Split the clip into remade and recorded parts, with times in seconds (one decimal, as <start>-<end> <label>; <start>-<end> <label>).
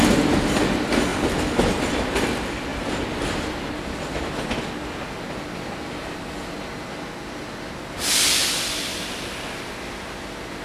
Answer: 0.0-2.7 recorded; 2.7-4.6 remade; 4.6-8.4 recorded; 8.4-9.0 remade; 9.0-10.6 recorded